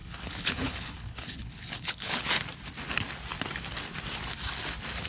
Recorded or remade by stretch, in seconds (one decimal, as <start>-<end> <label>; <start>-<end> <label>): 0.0-2.3 remade; 2.3-5.1 recorded